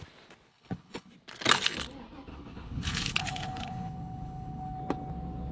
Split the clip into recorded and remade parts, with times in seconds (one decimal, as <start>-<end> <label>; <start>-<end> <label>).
0.0-0.5 recorded; 0.5-1.1 remade; 1.1-2.3 recorded; 2.3-4.8 remade; 4.8-5.5 recorded